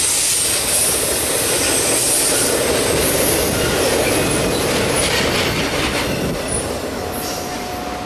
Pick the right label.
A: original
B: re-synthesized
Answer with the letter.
A